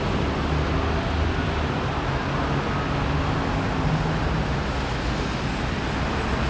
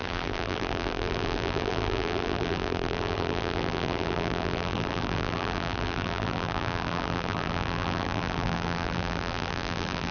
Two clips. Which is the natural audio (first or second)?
first